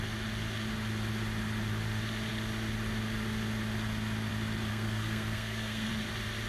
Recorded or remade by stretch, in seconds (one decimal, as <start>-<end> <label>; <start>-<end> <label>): 0.0-4.7 recorded; 4.7-5.9 remade; 5.9-6.5 recorded